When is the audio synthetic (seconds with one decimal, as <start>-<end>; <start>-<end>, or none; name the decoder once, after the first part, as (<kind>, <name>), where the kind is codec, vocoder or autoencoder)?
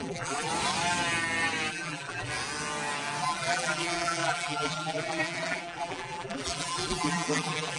0.0-0.5 (vocoder, BigVGAN v2); 1.7-2.3; 3.2-7.8